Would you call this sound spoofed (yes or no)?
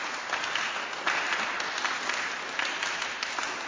no